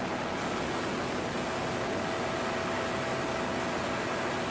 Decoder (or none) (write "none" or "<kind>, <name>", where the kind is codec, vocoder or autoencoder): none